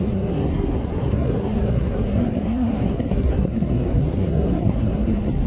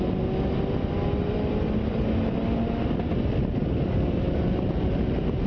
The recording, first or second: second